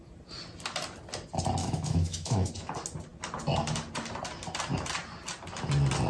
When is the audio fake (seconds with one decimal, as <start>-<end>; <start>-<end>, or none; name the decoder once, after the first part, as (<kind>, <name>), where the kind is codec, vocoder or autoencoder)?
1.6-2.5 (autoencoder, DAC-VAE)